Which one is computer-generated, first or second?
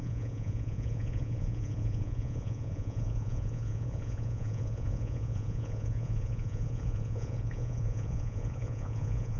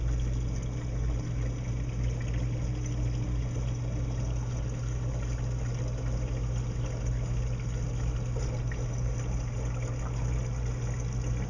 first